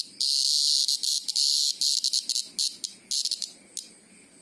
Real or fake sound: real